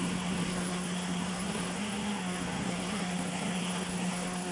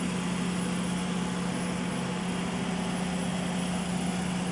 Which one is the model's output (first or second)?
first